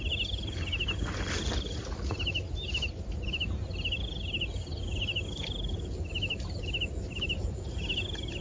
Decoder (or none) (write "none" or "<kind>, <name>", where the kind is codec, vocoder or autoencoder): none